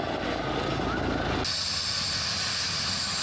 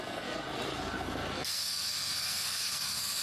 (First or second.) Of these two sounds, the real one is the first